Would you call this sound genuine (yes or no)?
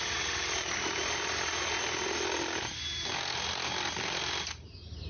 yes